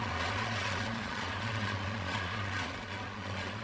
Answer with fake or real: fake